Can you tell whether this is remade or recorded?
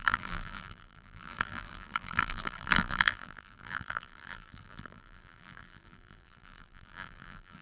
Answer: remade